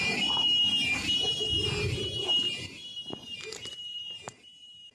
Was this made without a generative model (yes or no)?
no